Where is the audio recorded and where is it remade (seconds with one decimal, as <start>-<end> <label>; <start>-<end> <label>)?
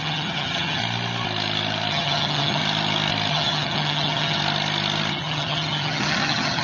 0.0-0.8 remade; 0.8-1.9 recorded; 1.9-2.6 remade; 2.6-3.3 recorded; 3.3-4.4 remade; 4.4-5.1 recorded; 5.1-6.6 remade